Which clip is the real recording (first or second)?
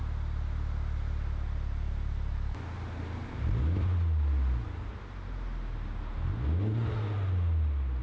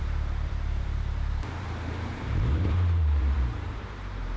first